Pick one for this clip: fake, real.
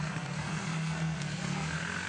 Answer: fake